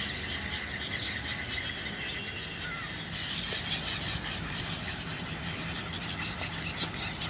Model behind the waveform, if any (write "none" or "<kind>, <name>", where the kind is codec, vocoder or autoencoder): none